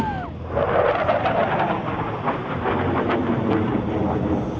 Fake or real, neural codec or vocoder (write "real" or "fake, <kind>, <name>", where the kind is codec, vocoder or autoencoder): real